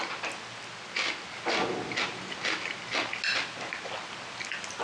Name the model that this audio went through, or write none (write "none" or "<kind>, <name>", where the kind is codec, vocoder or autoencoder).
none